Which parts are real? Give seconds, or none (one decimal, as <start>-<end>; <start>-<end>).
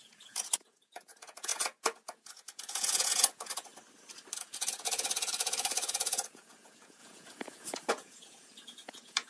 3.7-4.4